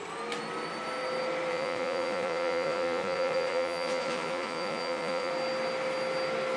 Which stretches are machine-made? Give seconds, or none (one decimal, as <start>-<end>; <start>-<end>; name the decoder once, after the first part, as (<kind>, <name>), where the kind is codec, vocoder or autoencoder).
1.5-5.3 (vocoder, Vocos)